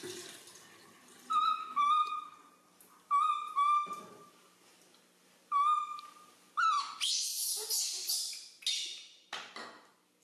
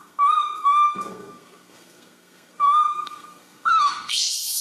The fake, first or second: second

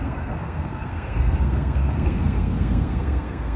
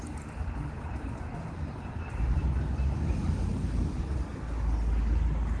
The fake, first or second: first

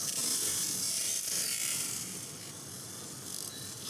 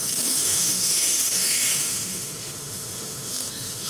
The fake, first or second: second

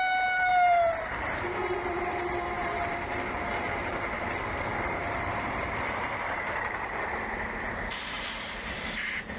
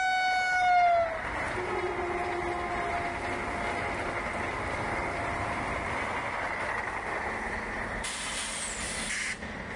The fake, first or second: first